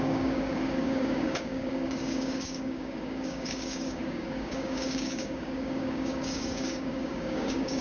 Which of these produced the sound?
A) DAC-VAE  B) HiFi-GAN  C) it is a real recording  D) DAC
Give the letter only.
D